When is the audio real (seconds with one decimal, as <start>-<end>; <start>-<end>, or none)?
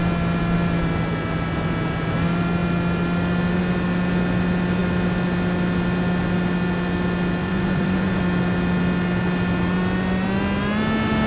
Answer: 0.0-7.4; 8.2-11.3